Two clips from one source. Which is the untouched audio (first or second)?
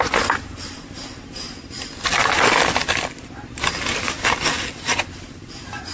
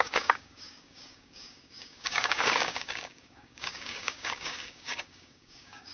first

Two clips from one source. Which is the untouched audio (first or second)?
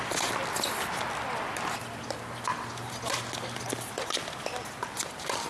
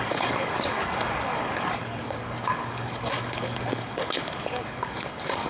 first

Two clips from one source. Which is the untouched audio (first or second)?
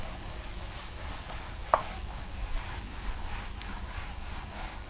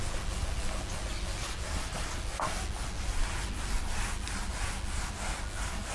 second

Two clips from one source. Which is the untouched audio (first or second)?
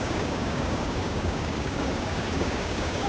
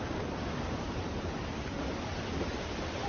second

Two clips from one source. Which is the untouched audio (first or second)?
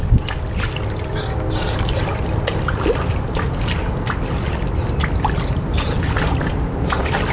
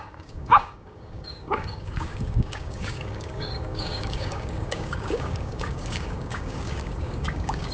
first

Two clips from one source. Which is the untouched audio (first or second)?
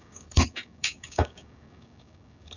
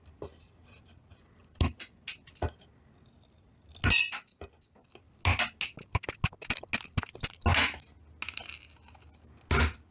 second